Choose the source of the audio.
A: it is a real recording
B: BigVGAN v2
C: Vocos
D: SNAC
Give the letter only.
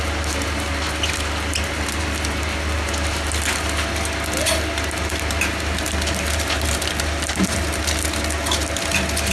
A